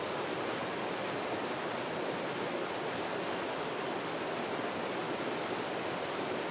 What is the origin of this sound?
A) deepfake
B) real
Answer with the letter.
B